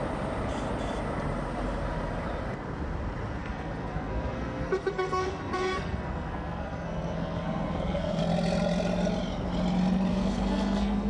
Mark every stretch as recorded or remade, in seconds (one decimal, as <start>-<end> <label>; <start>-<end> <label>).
0.0-3.4 recorded; 3.4-8.2 remade; 8.2-10.1 recorded; 10.1-11.1 remade